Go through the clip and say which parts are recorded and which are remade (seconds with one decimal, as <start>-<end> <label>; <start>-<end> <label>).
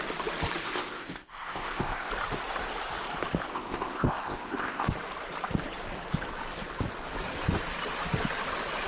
0.0-0.6 recorded; 0.6-2.1 remade; 2.1-3.5 recorded; 3.5-4.9 remade; 4.9-8.9 recorded